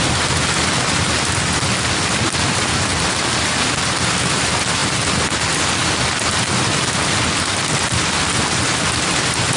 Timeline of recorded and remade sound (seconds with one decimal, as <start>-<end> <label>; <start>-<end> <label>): 0.0-9.6 recorded